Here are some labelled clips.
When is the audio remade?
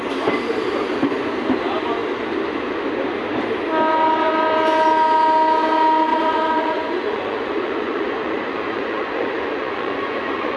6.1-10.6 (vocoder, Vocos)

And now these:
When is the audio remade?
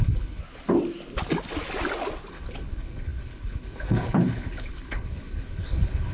0.0-0.4 (codec, HILCodec); 2.3-6.1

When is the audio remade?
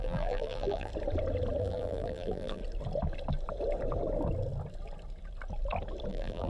0.0-0.9 (vocoder, BigVGAN v2); 1.6-2.6; 6.1-6.5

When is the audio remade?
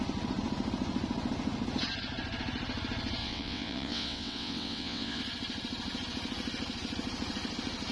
3.2-5.2 (vocoder, WaveNeXt)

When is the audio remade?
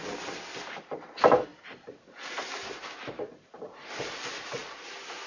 none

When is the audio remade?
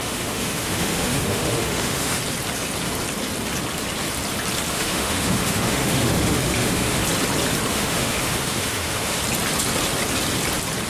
0.0-2.2 (autoencoder, DAC-VAE); 4.7-7.0; 7.7-9.2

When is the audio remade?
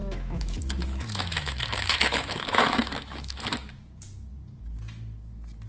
0.0-3.4 (autoencoder, DAC-VAE)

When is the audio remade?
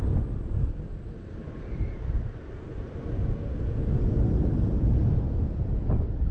0.0-1.4 (vocoder, BigVGAN v2); 5.2-6.3